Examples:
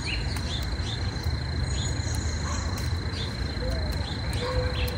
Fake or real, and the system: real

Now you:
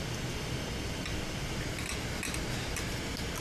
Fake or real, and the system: real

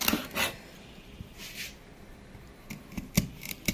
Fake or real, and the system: real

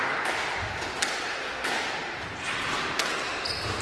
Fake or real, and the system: real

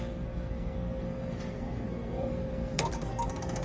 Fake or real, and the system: fake, codec, SNAC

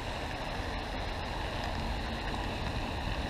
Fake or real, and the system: real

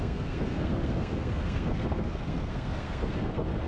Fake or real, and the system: fake, codec, SNAC